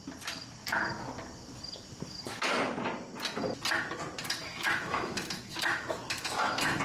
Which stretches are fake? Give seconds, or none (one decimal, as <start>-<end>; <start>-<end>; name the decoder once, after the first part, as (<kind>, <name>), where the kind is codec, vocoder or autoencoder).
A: 4.4-6.8 (autoencoder, DAC-VAE)